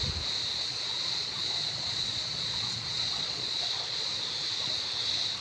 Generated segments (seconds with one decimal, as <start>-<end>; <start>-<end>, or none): 0.9-4.1